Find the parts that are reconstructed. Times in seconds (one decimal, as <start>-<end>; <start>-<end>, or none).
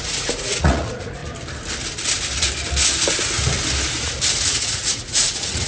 0.0-1.2; 4.6-5.7